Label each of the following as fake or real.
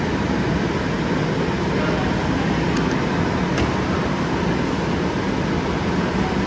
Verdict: real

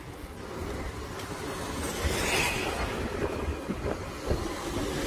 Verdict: real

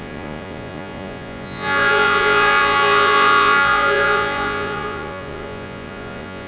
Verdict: fake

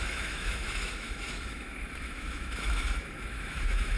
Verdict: fake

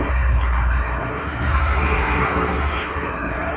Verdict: fake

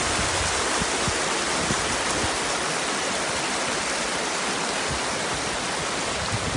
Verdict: real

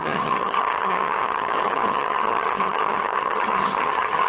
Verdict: fake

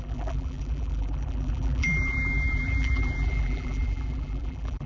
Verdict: fake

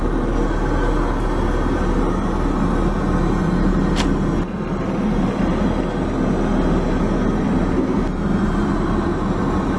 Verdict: real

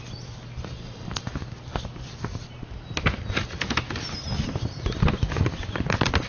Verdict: real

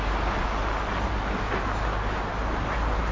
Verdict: real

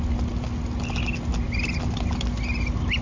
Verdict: real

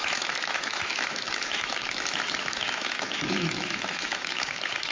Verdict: fake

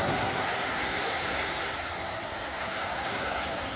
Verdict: fake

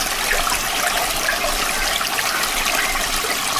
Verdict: real